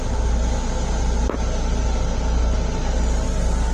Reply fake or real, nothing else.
real